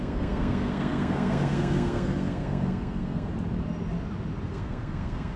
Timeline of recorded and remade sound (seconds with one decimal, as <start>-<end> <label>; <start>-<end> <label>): 0.0-3.3 remade; 3.3-4.5 recorded; 4.5-5.4 remade